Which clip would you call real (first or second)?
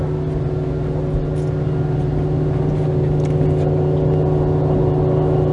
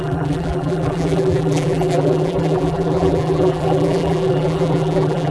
first